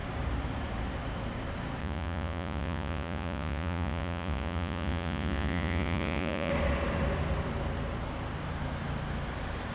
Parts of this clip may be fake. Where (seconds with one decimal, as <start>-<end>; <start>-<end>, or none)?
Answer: 1.8-6.5